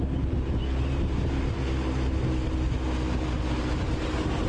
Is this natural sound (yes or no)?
yes